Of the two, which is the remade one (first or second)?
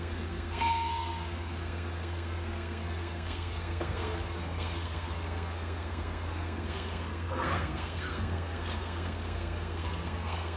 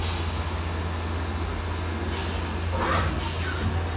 first